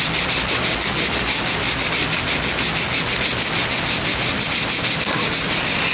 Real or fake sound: real